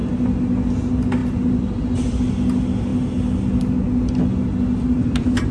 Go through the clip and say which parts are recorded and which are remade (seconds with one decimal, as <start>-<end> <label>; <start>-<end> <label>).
0.0-5.5 recorded